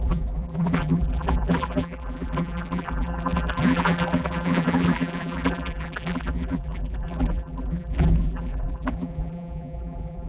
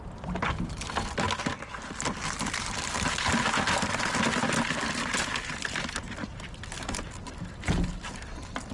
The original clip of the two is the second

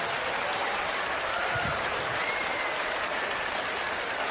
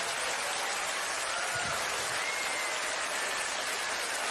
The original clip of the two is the second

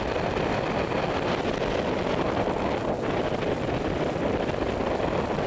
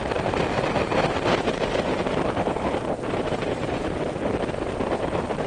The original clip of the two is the first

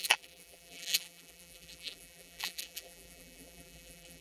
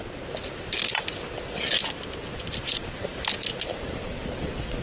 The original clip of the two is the second